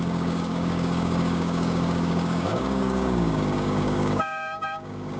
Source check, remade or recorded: remade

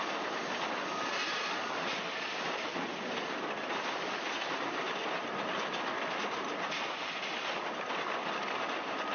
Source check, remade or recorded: recorded